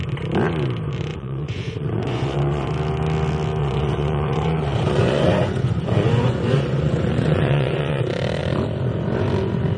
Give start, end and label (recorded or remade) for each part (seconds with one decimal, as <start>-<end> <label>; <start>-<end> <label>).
0.0-1.1 recorded; 1.1-2.7 remade; 2.7-3.6 recorded; 3.6-8.0 remade; 8.0-9.8 recorded